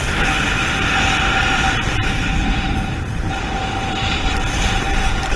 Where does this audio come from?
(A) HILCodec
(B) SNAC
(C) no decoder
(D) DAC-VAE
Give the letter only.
C